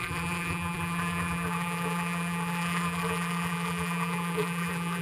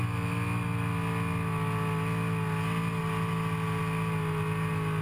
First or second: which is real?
second